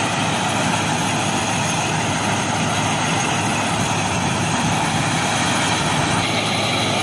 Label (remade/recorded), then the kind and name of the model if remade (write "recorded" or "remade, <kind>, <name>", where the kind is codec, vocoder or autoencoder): recorded